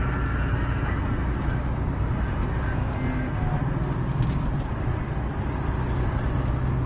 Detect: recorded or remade recorded